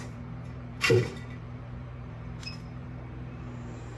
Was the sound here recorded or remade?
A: remade